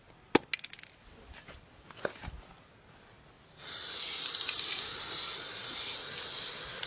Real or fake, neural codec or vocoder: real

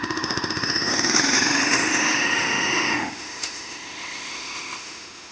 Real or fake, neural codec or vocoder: fake, autoencoder, DAC-VAE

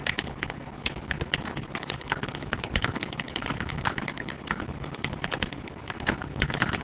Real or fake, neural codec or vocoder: fake, codec, HILCodec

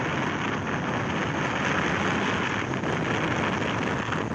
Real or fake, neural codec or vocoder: real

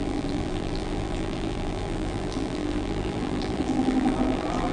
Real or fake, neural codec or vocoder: fake, vocoder, BigVGAN v2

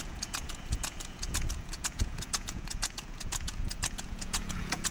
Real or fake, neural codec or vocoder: fake, vocoder, Vocos